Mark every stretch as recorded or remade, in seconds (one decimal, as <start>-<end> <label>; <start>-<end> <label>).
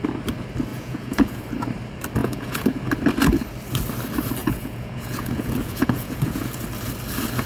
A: 0.0-0.7 recorded; 0.7-1.4 remade; 1.4-2.2 recorded; 2.2-2.8 remade; 2.8-4.4 recorded; 4.4-6.6 remade; 6.6-7.5 recorded